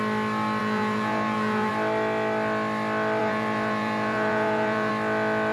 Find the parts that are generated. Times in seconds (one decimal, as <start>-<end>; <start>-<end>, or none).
0.6-1.7; 3.2-4.9